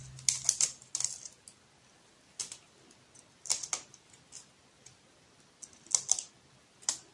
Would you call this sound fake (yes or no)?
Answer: no